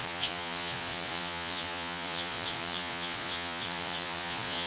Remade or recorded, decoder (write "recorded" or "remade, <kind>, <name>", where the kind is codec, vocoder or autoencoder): remade, vocoder, Vocos